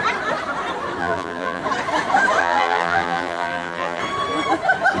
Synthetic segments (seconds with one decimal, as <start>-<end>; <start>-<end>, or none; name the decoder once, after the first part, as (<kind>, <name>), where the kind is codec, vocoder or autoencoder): 1.0-1.6 (vocoder, BigVGAN v2); 2.4-4.0